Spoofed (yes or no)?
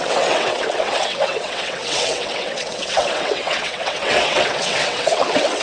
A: yes